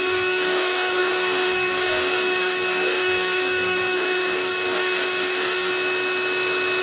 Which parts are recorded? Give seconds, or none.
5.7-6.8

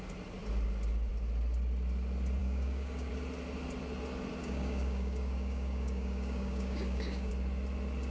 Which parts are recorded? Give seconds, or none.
0.0-2.4; 3.1-4.4; 7.3-8.1

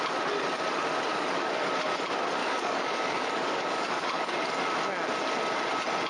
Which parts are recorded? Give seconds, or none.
0.0-1.1; 1.7-2.4; 4.3-6.1

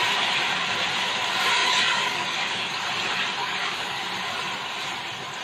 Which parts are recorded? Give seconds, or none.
0.0-1.6; 2.8-3.4; 4.0-5.4